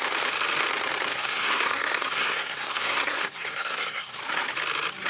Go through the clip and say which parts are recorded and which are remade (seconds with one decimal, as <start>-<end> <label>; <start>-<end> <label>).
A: 0.0-1.1 recorded; 1.1-4.2 remade; 4.2-5.1 recorded